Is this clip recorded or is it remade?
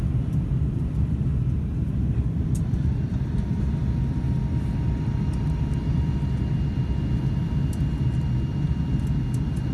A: recorded